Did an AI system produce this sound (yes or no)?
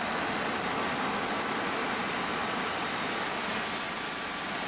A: no